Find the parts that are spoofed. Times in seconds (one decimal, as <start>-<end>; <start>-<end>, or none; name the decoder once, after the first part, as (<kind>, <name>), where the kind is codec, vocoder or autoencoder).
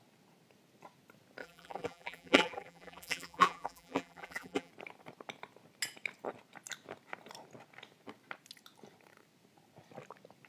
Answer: 1.4-4.7 (vocoder, BigVGAN v2)